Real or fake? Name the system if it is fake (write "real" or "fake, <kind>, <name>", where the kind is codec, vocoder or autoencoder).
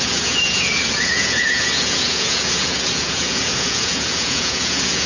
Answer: fake, vocoder, Vocos